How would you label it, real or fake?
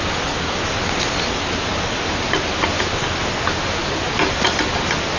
real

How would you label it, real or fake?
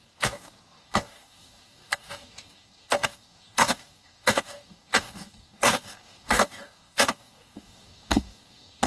fake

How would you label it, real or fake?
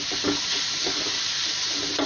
real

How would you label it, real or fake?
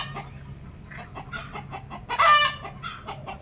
real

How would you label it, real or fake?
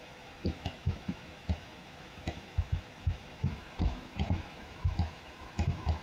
fake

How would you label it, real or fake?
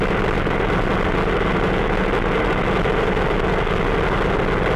real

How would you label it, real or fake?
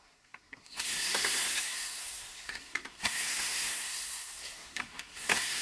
fake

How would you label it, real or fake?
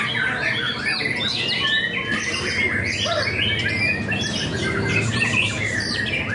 real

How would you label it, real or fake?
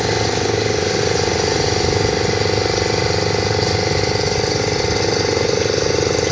real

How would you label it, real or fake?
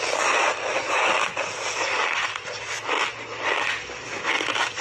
real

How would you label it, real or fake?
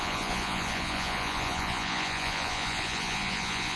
fake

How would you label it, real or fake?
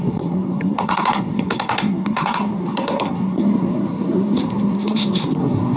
fake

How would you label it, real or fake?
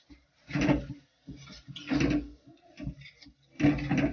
real